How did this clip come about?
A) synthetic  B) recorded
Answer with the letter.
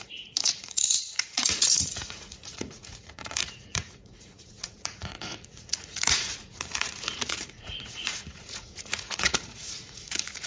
A